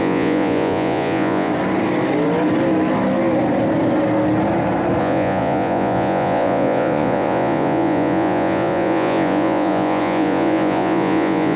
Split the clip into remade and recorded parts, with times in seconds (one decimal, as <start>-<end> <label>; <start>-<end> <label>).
0.0-1.5 remade; 1.5-5.0 recorded; 5.0-11.6 remade